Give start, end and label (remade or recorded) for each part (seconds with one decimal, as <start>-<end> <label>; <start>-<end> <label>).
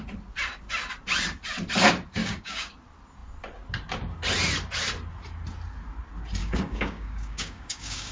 0.0-2.2 recorded; 2.2-2.7 remade; 2.7-6.4 recorded; 6.4-8.1 remade